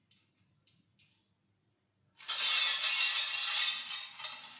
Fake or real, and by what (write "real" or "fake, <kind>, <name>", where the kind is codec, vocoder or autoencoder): real